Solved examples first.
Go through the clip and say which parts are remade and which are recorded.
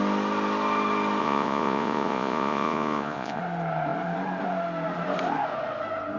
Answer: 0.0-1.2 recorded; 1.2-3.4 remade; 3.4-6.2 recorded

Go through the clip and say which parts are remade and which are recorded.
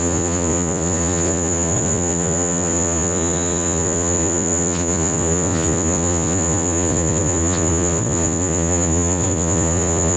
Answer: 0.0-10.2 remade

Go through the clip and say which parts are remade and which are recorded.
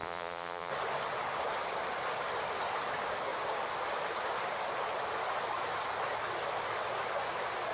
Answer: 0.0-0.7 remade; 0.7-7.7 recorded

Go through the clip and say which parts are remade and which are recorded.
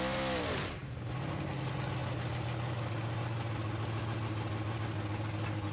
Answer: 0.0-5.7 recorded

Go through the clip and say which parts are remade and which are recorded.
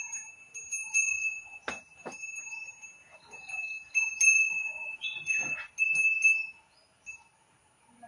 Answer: 0.0-0.8 recorded; 0.8-1.6 remade; 1.6-4.3 recorded; 4.3-5.7 remade; 5.7-8.1 recorded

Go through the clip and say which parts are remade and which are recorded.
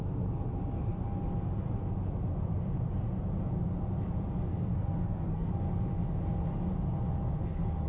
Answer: 0.0-4.5 recorded; 4.5-5.5 remade; 5.5-7.9 recorded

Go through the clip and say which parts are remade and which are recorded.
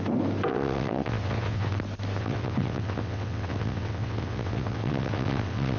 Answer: 0.0-0.5 recorded; 0.5-1.7 remade; 1.7-2.2 recorded; 2.2-5.8 remade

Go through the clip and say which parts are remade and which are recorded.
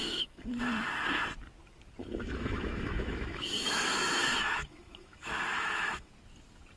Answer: 0.0-0.6 remade; 0.6-2.0 recorded; 2.0-6.1 remade; 6.1-6.8 recorded